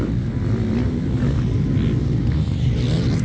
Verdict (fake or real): real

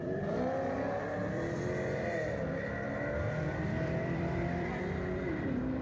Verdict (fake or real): fake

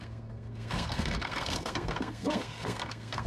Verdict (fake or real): fake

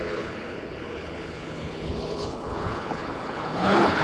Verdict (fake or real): fake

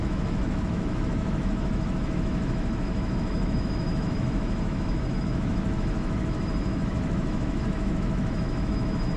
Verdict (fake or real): fake